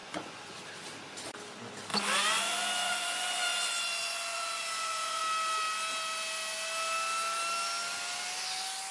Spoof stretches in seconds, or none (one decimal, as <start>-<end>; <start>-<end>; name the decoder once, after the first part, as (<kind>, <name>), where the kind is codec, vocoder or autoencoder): 0.0-0.6 (vocoder, Vocos); 1.9-5.2